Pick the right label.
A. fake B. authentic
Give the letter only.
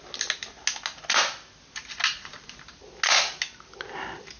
B